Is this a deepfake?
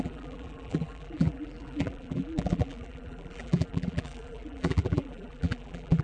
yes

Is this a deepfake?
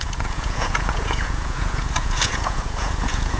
yes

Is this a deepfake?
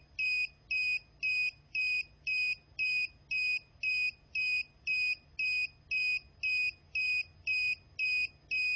no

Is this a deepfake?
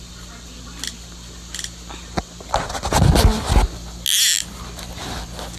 no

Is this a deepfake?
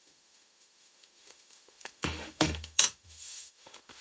yes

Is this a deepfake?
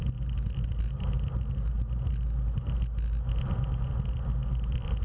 no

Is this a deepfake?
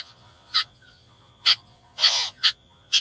yes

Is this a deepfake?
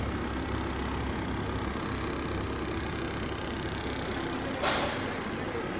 no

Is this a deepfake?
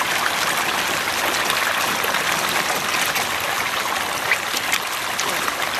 no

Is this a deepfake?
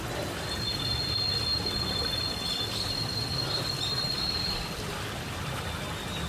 no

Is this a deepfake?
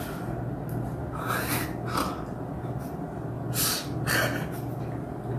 no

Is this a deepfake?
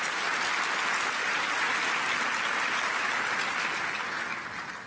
no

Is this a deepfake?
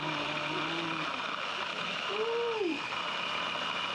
yes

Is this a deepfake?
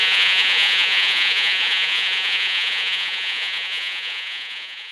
yes